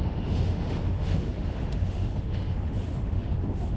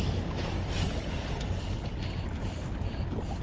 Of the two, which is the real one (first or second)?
second